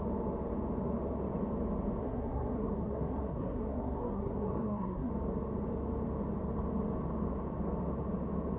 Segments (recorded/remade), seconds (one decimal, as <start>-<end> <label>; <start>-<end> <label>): 0.0-2.0 recorded; 2.0-5.1 remade; 5.1-8.6 recorded